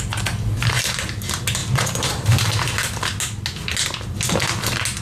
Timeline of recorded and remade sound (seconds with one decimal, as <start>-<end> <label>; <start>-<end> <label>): 0.0-1.6 recorded; 1.6-2.6 remade; 2.6-5.0 recorded